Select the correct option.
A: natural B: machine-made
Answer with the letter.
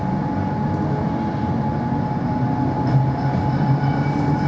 A